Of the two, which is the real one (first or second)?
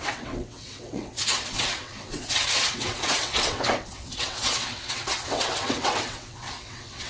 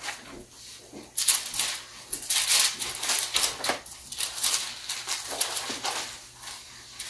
second